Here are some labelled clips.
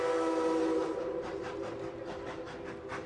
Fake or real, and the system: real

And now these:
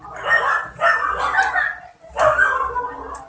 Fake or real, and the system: real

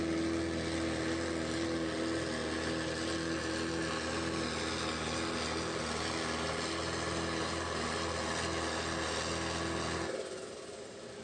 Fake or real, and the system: real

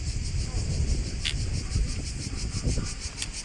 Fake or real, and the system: real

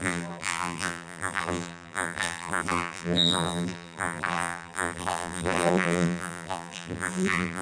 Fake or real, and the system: fake, vocoder, BigVGAN v2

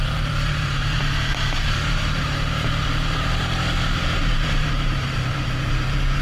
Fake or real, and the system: fake, vocoder, BigVGAN v2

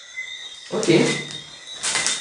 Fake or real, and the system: real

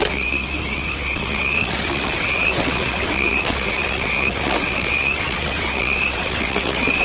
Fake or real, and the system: fake, vocoder, WaveNeXt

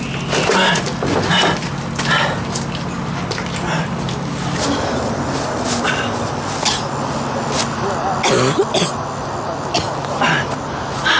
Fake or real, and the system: real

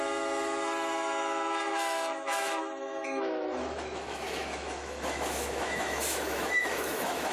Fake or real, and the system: fake, autoencoder, DAC-VAE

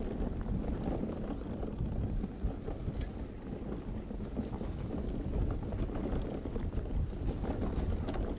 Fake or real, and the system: real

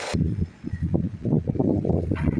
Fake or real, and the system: fake, vocoder, Vocos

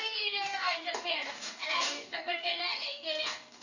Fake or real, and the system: fake, codec, DAC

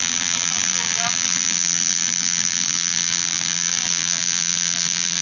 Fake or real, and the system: fake, vocoder, BigVGAN v2